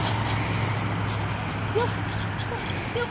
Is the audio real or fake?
real